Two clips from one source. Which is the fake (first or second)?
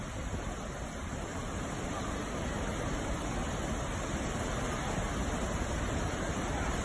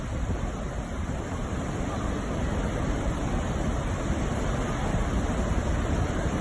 second